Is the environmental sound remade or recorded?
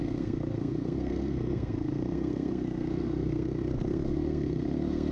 remade